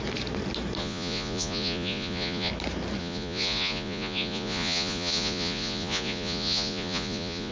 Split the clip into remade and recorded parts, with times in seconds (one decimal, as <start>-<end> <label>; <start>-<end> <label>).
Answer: 0.0-0.8 recorded; 0.8-2.5 remade; 2.5-3.0 recorded; 3.0-7.5 remade